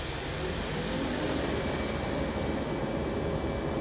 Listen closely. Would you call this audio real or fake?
real